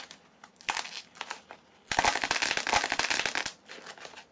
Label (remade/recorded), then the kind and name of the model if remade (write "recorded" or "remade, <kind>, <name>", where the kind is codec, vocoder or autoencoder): recorded